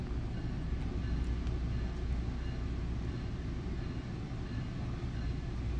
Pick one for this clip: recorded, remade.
recorded